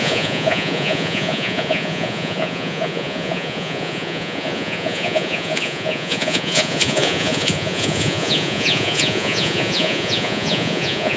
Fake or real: fake